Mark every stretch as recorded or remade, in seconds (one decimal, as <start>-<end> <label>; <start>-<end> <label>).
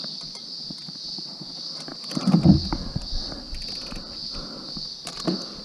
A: 0.0-5.6 recorded